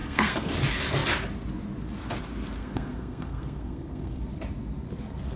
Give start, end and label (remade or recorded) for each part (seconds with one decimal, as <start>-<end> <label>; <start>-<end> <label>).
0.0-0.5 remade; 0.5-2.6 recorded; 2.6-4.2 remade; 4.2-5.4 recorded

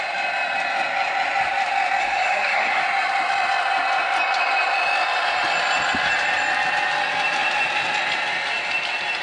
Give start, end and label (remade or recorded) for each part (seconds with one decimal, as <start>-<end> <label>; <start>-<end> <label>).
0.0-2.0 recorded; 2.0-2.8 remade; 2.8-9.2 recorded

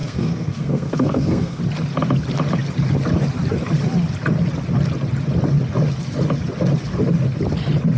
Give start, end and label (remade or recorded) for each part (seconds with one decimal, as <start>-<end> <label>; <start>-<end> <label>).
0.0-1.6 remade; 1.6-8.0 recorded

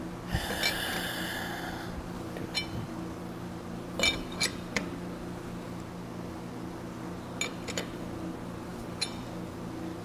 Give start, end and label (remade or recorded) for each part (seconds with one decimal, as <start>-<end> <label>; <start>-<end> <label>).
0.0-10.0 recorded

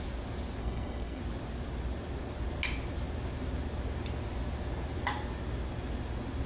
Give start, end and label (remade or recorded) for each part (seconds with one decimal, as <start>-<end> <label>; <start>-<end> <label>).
0.0-0.6 recorded; 0.6-1.2 remade; 1.2-6.5 recorded

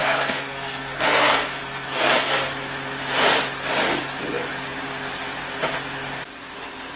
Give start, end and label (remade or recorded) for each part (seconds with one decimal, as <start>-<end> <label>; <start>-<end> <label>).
0.0-2.5 remade; 2.5-7.0 recorded